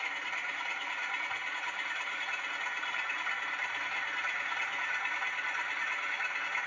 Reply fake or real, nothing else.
real